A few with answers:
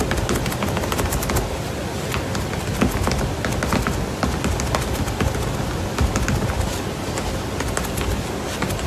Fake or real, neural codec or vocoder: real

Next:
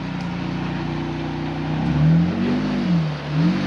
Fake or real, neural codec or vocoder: real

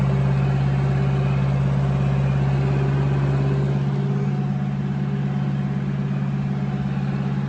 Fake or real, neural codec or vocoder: real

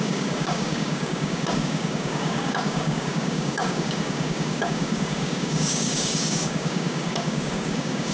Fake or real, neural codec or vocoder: fake, codec, DAC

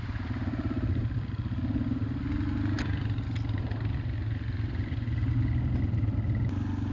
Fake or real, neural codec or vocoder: real